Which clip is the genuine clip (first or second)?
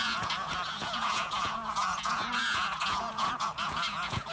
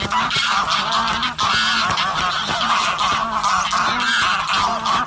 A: second